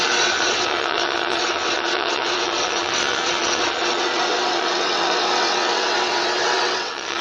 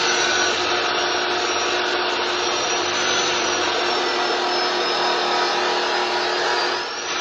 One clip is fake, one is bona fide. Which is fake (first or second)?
first